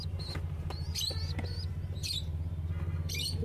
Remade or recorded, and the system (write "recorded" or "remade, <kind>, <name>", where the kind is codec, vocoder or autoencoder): recorded